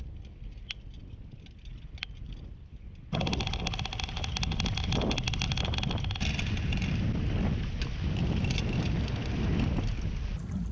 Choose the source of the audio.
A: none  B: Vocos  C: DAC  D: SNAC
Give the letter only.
A